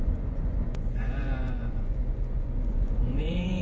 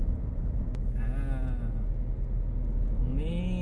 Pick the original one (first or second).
second